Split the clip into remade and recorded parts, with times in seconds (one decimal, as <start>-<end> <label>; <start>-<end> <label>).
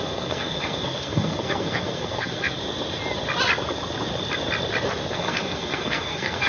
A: 0.0-2.6 remade; 2.6-5.1 recorded; 5.1-6.5 remade